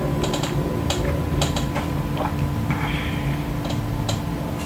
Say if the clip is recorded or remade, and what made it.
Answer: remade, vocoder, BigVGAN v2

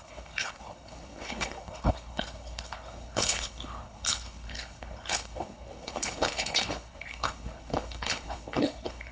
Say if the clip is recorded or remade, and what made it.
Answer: remade, codec, HILCodec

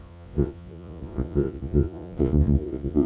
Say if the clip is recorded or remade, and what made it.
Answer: remade, vocoder, Vocos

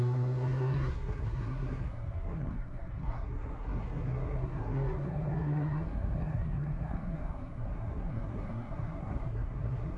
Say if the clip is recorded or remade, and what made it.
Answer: remade, codec, SNAC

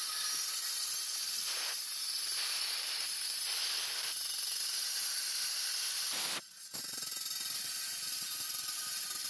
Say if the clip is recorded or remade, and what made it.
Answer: remade, vocoder, BigVGAN v2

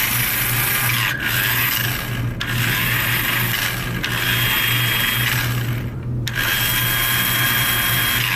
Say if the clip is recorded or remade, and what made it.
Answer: recorded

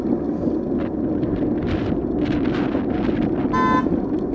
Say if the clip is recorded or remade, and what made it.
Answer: recorded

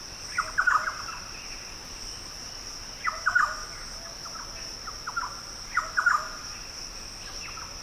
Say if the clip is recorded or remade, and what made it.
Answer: recorded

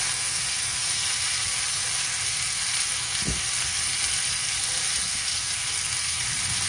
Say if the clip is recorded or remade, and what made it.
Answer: recorded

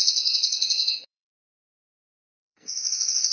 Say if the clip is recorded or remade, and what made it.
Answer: remade, codec, SNAC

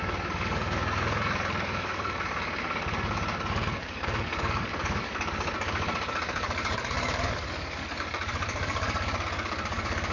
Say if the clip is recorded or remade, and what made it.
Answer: remade, codec, DAC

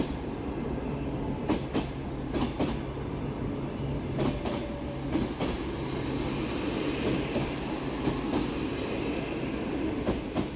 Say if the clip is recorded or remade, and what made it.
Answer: recorded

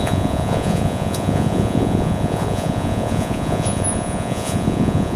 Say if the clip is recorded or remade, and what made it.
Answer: remade, vocoder, Vocos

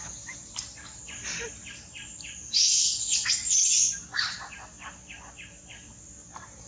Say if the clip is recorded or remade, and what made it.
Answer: recorded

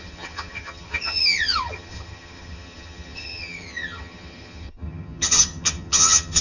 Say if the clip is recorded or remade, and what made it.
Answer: remade, vocoder, HiFi-GAN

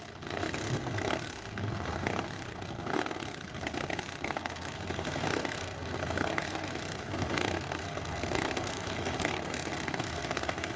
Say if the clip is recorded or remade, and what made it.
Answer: remade, codec, SNAC